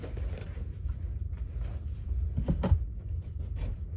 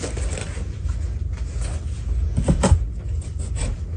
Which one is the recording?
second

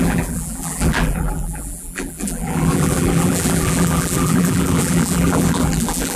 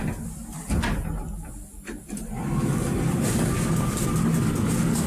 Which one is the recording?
second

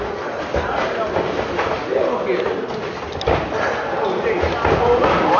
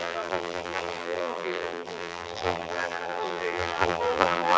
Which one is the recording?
first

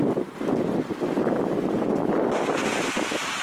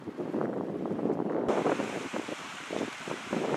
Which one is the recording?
first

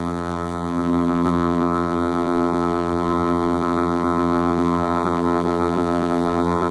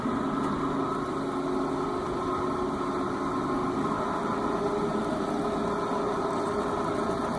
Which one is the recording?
second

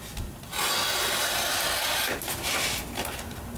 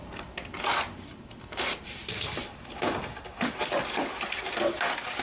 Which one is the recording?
first